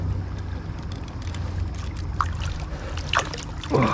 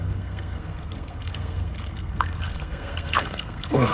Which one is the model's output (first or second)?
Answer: second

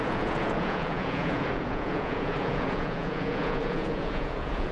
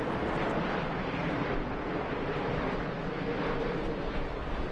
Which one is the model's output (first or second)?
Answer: first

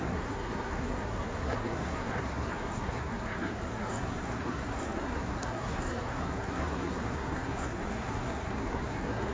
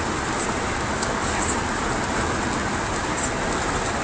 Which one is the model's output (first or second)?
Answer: first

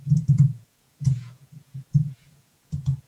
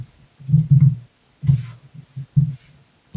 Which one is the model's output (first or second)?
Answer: first